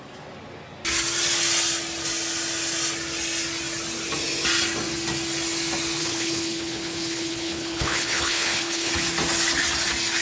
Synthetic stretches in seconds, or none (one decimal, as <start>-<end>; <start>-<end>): 6.0-8.9